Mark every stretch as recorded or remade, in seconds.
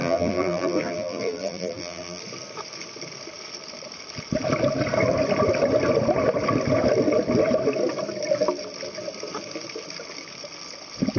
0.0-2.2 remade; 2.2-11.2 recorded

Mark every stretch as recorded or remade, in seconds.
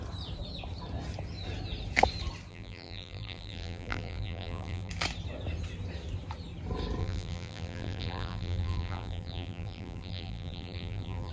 0.0-2.5 recorded; 2.5-4.9 remade; 4.9-7.0 recorded; 7.0-11.3 remade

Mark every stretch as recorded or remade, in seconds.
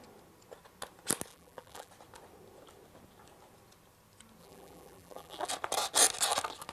0.0-1.3 recorded; 1.3-1.9 remade; 1.9-4.4 recorded; 4.4-5.5 remade; 5.5-6.7 recorded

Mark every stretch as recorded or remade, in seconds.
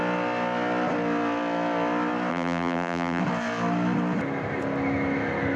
0.0-2.3 recorded; 2.3-3.2 remade; 3.2-5.6 recorded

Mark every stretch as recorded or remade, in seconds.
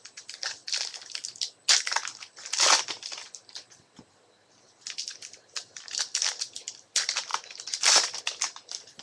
0.0-0.6 remade; 0.6-2.8 recorded; 2.8-7.3 remade; 7.3-8.2 recorded; 8.2-9.0 remade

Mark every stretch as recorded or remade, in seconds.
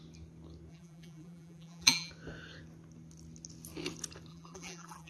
0.0-0.7 recorded; 0.7-2.1 remade; 2.1-4.3 recorded; 4.3-5.1 remade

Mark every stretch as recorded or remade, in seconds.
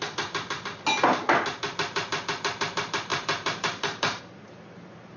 0.0-3.1 recorded; 3.1-4.2 remade; 4.2-5.2 recorded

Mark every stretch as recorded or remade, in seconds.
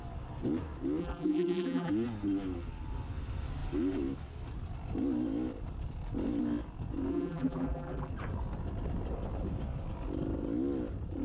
0.0-1.0 recorded; 1.0-1.9 remade; 1.9-7.1 recorded; 7.1-8.1 remade; 8.1-11.2 recorded